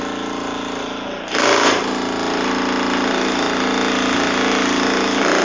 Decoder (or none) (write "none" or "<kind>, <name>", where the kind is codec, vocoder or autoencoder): none